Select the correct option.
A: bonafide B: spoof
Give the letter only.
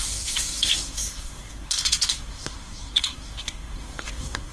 B